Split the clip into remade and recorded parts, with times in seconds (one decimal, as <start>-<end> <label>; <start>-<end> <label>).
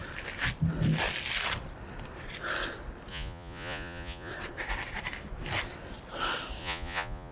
0.0-3.1 recorded; 3.1-4.3 remade; 4.3-6.6 recorded; 6.6-7.3 remade